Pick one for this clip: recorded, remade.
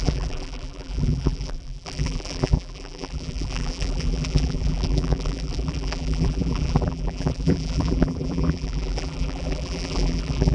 remade